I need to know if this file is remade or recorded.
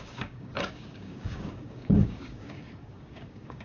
remade